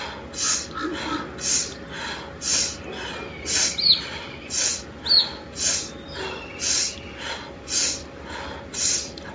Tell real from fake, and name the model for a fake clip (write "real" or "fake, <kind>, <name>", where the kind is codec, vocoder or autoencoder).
real